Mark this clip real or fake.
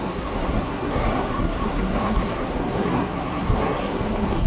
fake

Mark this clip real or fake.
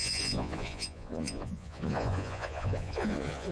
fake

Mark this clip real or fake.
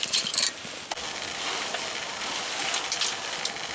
real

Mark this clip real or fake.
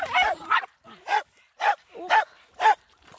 real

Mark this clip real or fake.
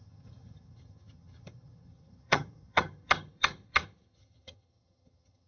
fake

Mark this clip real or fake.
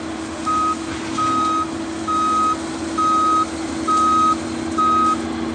real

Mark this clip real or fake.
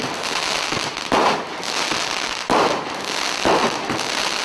real